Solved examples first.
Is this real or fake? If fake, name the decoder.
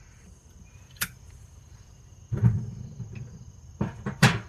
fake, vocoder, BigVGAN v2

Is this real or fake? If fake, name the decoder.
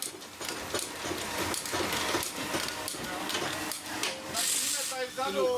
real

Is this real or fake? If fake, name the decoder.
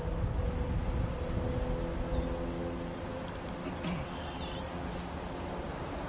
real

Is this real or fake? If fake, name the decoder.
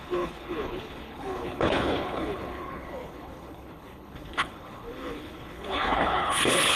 fake, codec, HILCodec